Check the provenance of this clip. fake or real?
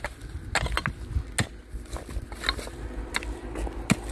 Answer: real